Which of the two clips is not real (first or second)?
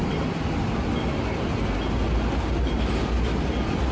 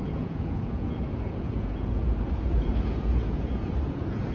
second